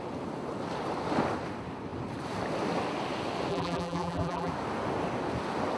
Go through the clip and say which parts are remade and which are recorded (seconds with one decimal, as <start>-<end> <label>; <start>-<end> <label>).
0.0-3.5 recorded; 3.5-4.5 remade; 4.5-5.8 recorded